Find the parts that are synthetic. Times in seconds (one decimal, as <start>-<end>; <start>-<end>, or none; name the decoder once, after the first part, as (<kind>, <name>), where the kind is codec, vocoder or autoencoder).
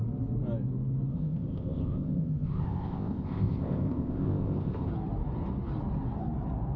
1.1-4.9 (codec, ZipCodec)